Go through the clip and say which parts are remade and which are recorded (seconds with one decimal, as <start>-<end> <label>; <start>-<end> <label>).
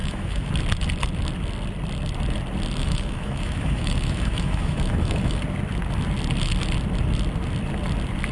0.0-0.5 remade; 0.5-2.8 recorded; 2.8-5.4 remade; 5.4-8.3 recorded